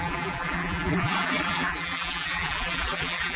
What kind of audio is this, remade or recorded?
remade